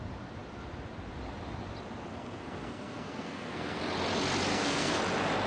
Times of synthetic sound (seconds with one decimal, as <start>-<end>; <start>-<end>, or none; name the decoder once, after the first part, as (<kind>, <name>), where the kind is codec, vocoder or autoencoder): 2.1-3.8 (codec, SNAC); 4.5-5.0